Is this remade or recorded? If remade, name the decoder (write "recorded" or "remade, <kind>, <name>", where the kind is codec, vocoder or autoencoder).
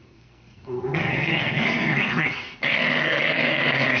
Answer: remade, codec, SNAC